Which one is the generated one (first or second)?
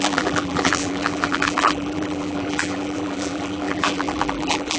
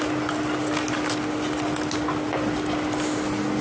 first